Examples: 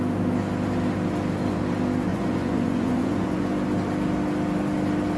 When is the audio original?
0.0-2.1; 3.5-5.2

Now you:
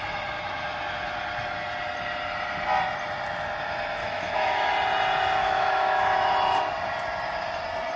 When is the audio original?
0.0-4.0; 4.7-5.4; 6.3-8.0

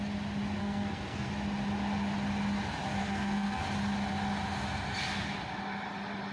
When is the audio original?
0.0-0.6; 1.3-3.0; 3.6-6.3

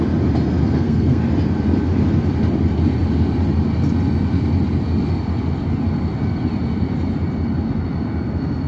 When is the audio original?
0.0-0.6; 1.2-8.7

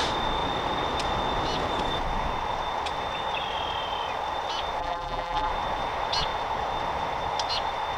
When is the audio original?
0.0-4.8; 5.5-8.0

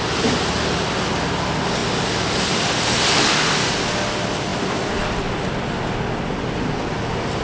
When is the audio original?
0.0-7.4